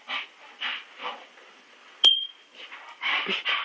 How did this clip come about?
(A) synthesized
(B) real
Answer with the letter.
A